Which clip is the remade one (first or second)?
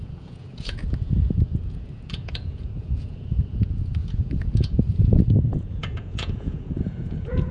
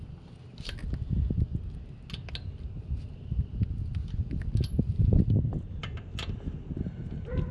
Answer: first